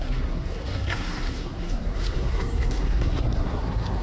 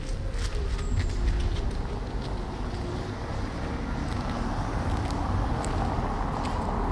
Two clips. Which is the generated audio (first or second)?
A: first